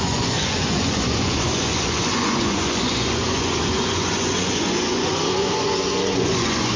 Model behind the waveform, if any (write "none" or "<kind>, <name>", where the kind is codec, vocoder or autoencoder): vocoder, Vocos